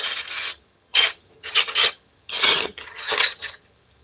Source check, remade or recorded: remade